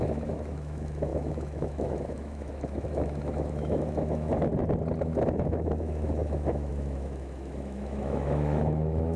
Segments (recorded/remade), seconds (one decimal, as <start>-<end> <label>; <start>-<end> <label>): 0.0-4.5 remade; 4.5-5.0 recorded; 5.0-9.2 remade